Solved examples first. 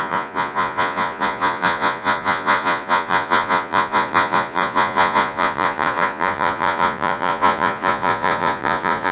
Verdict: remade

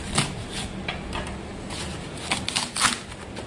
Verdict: recorded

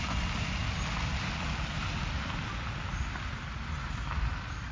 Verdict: recorded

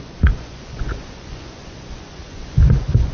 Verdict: remade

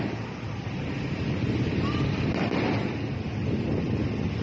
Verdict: recorded